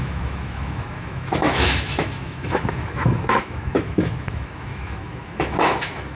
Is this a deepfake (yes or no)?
yes